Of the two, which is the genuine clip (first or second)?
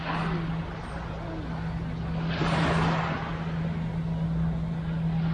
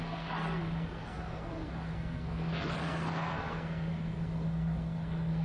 first